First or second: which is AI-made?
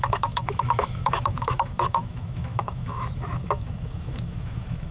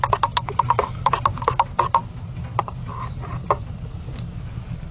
first